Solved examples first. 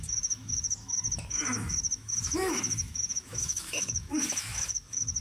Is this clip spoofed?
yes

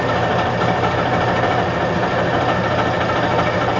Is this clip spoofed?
no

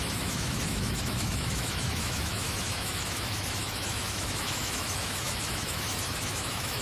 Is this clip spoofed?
yes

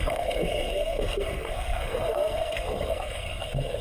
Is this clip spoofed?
yes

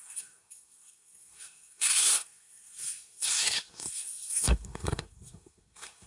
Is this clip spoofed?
yes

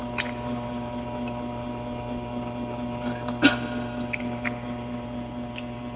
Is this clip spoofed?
no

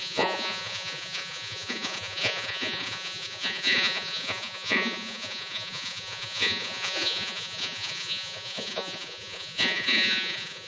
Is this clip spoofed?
yes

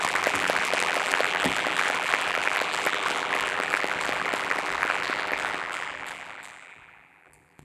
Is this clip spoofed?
yes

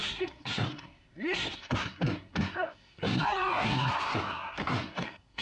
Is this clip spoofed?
yes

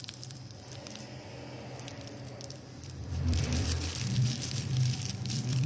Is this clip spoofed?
yes